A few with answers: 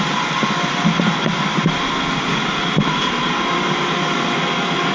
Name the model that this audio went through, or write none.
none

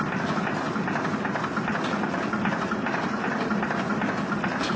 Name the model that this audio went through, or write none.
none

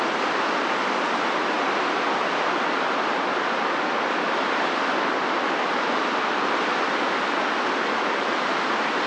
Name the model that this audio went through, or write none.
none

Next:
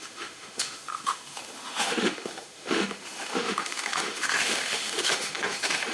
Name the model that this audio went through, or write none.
autoencoder, DAC-VAE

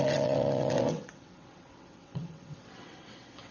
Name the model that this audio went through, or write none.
vocoder, WaveNeXt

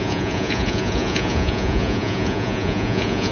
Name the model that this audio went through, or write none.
vocoder, Vocos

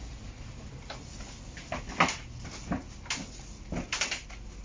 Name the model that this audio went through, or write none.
none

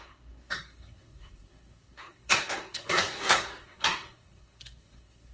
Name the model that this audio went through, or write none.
codec, SNAC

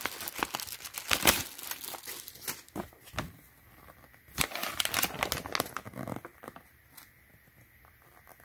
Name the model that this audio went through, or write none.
none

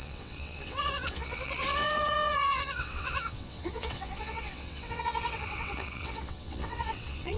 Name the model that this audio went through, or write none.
vocoder, WaveNeXt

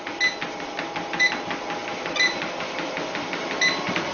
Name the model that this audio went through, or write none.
none